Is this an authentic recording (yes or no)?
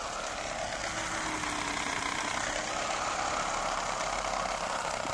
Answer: yes